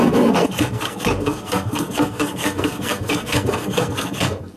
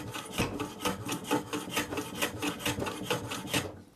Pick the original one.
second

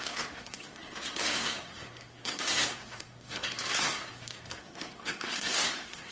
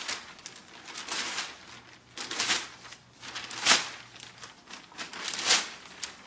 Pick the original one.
second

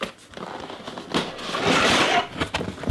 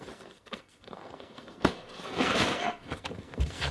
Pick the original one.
first